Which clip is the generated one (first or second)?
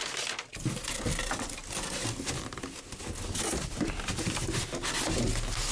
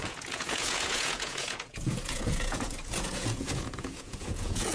second